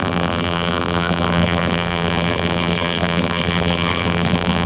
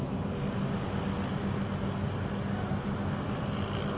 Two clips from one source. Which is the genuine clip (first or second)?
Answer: second